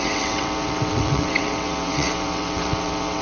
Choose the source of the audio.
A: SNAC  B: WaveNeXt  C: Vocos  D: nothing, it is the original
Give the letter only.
B